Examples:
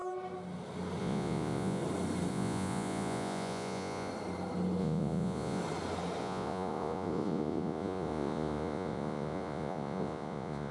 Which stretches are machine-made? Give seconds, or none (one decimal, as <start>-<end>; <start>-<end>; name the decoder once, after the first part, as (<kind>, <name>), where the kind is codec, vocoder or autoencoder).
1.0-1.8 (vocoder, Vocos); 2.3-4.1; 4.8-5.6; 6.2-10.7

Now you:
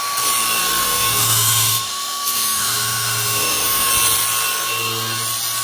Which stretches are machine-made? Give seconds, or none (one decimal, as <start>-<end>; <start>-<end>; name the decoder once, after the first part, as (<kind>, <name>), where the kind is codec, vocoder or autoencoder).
0.8-3.9 (autoencoder, DAC-VAE)

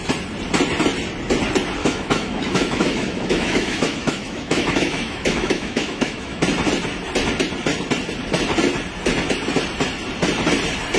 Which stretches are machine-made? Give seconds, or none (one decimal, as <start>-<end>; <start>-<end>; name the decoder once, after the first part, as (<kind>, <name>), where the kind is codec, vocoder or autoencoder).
1.8-6.4 (autoencoder, DAC-VAE)

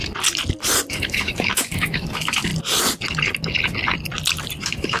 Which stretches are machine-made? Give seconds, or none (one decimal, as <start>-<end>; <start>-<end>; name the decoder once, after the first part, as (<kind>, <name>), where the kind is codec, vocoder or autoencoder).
0.9-2.5 (autoencoder, DAC-VAE); 4.6-5.0